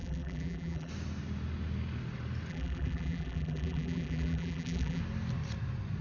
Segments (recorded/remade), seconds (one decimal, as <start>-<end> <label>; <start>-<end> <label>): 0.0-0.9 remade; 0.9-2.5 recorded; 2.5-5.0 remade; 5.0-6.0 recorded